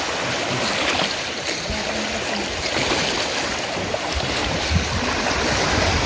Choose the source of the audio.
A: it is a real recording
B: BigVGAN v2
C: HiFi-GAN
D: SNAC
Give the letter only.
A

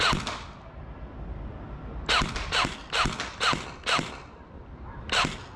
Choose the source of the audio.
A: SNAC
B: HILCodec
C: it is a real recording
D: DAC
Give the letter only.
C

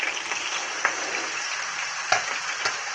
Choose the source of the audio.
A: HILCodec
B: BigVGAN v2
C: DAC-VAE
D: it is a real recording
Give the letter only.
B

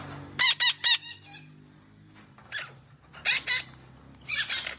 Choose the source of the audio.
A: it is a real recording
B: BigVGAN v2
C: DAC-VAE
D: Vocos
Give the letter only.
A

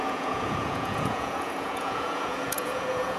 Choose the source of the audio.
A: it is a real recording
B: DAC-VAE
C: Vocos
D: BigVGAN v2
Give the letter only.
C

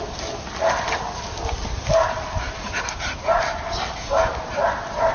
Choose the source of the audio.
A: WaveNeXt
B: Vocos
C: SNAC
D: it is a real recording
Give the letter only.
D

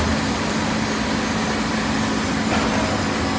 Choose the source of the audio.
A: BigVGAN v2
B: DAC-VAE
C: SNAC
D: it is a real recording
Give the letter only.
D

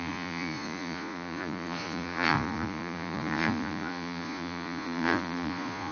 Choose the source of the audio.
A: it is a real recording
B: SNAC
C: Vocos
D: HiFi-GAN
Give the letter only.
C